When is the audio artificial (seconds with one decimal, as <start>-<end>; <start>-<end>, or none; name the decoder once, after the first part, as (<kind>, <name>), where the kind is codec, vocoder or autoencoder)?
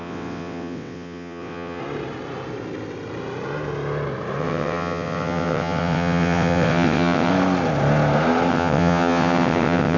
0.0-1.8 (vocoder, WaveNeXt); 4.4-7.3; 8.5-10.0